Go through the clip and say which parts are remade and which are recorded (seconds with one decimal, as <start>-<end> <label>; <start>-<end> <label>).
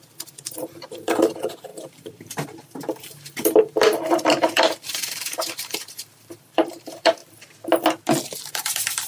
0.0-7.2 remade; 7.2-8.4 recorded; 8.4-9.1 remade